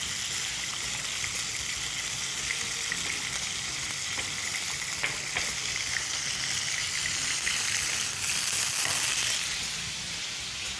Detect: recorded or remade recorded